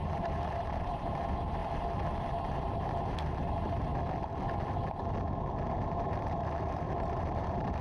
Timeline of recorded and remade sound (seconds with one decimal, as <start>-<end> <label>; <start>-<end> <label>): 0.0-1.6 remade; 1.6-2.4 recorded; 2.4-3.9 remade; 3.9-5.9 recorded; 5.9-7.8 remade